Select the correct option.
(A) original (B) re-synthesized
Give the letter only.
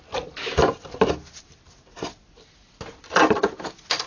A